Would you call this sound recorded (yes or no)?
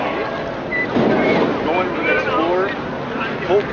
yes